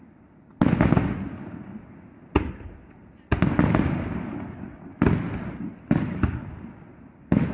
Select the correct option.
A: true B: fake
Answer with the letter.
A